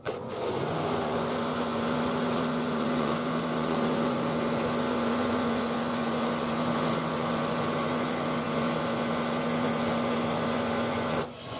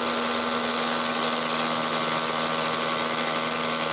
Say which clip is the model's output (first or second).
first